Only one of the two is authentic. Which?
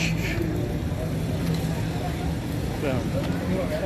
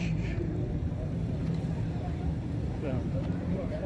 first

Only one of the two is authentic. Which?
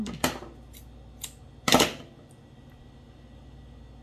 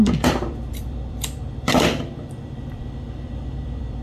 first